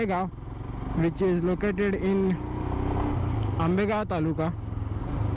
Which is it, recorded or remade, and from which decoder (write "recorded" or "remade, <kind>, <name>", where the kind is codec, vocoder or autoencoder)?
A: recorded